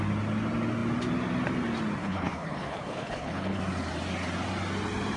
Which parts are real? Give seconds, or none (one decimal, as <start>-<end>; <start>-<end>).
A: 0.0-2.0; 3.6-5.2